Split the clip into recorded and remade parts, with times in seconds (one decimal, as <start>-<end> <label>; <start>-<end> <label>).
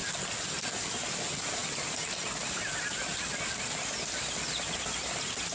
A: 0.0-5.5 recorded